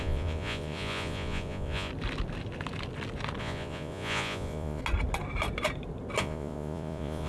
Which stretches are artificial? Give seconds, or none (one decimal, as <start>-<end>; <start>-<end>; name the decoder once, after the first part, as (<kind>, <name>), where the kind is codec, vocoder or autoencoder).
0.0-1.9 (vocoder, Vocos); 3.4-4.8; 6.2-7.3